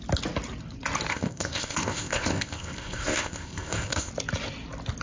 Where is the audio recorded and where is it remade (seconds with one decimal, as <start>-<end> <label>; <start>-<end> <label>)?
0.0-1.1 recorded; 1.1-4.1 remade; 4.1-5.0 recorded